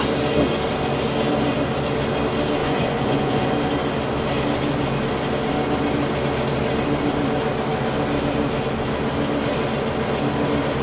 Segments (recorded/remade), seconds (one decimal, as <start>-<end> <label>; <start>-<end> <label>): 0.0-2.6 recorded; 2.6-3.5 remade; 3.5-10.8 recorded